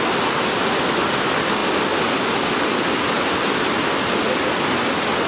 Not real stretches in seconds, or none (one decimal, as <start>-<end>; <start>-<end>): none